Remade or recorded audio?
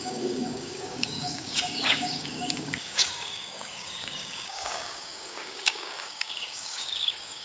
remade